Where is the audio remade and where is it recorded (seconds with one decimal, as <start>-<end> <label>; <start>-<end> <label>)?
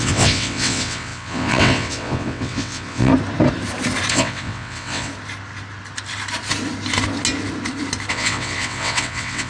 0.0-3.1 remade; 3.1-4.1 recorded; 4.1-5.1 remade; 5.1-8.1 recorded; 8.1-9.5 remade